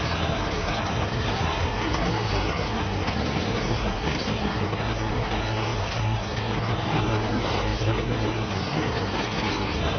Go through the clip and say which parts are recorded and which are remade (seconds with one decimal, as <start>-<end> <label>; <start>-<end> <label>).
0.0-10.0 remade